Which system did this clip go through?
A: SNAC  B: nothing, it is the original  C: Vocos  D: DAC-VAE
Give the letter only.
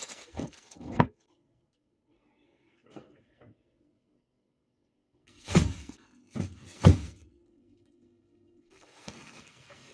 A